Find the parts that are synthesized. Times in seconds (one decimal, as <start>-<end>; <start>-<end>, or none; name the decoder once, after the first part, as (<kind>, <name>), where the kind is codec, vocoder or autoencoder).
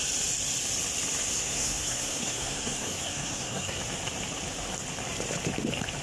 1.3-3.8 (codec, SNAC)